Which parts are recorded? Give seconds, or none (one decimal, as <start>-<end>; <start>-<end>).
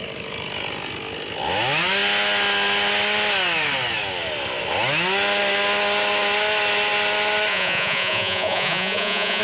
0.0-7.5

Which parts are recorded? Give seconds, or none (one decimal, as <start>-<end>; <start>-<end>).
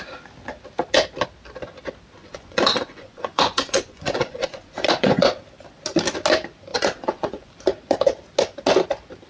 0.0-2.2; 5.3-6.7; 7.5-9.3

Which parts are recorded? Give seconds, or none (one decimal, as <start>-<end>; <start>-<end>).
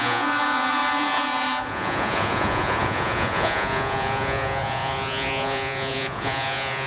none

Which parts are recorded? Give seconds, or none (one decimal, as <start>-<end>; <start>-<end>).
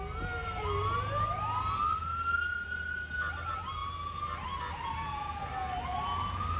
0.0-6.6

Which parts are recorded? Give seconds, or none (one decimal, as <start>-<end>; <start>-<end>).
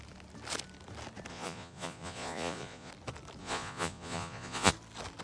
0.0-1.3; 2.9-3.4; 4.7-5.2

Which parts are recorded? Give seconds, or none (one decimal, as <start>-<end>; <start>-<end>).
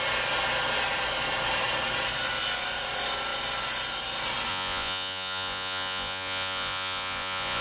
0.0-4.5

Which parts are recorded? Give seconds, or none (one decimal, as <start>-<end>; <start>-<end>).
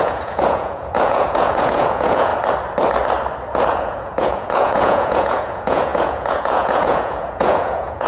2.3-3.7